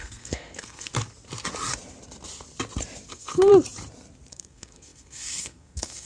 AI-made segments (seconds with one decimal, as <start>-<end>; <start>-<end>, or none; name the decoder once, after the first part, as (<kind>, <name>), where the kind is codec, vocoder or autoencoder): 0.0-0.9 (codec, SNAC); 3.1-3.5; 4.3-6.1